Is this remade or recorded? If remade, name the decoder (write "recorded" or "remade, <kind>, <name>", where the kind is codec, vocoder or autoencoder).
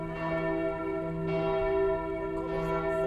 recorded